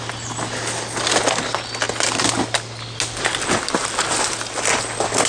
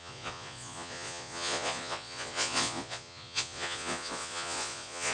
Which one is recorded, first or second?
first